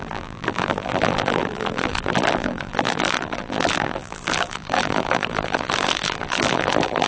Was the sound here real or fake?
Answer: fake